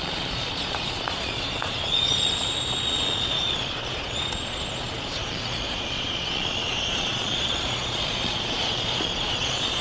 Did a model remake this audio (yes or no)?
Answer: yes